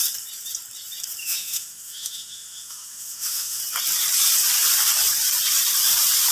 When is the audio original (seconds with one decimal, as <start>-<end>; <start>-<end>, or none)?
0.0-1.2; 3.6-6.3